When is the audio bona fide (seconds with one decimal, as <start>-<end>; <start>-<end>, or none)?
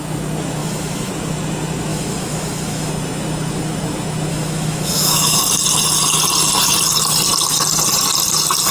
0.0-0.6; 1.1-1.9; 2.9-4.3; 5.4-8.7